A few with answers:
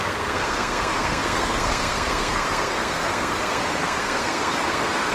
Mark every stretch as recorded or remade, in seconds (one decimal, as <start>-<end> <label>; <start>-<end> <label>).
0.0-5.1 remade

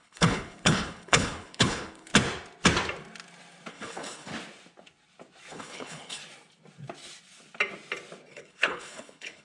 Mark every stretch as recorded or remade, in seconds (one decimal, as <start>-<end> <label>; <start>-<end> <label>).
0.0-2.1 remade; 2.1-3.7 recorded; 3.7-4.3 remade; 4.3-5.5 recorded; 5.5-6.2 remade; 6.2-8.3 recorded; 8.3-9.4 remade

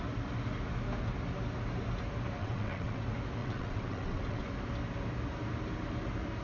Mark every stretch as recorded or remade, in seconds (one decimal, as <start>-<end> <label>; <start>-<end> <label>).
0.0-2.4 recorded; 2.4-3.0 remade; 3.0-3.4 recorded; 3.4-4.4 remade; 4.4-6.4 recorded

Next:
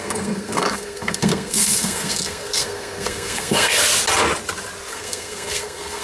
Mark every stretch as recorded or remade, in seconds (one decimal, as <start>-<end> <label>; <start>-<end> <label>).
0.0-3.8 remade; 3.8-4.9 recorded; 4.9-6.0 remade